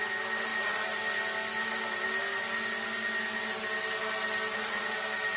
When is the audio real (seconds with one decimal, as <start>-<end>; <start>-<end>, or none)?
0.0-5.4